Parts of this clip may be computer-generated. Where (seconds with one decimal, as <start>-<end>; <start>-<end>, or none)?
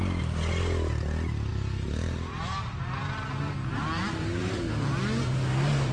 1.5-3.4